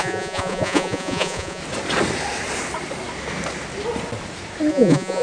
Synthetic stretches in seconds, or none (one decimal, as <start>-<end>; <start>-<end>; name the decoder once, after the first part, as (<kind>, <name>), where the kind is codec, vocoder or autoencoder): 0.0-1.6 (vocoder, Vocos); 4.7-5.2